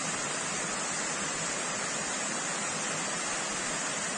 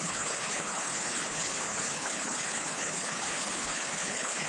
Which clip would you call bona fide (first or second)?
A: first